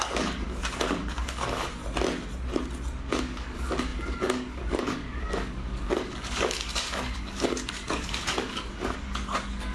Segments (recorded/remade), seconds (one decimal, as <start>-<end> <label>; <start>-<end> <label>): 0.0-1.8 remade; 1.8-3.0 recorded; 3.0-9.7 remade